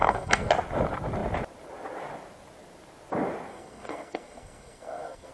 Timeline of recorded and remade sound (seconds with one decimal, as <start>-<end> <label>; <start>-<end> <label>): 0.0-0.5 remade; 0.5-3.5 recorded; 3.5-5.3 remade